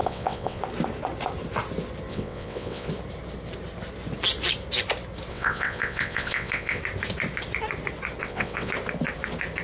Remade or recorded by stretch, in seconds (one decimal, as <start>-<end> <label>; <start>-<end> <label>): 0.0-0.6 remade; 0.6-2.1 recorded; 2.1-2.9 remade; 2.9-5.3 recorded; 5.3-6.8 remade; 6.8-8.2 recorded; 8.2-8.7 remade; 8.7-9.6 recorded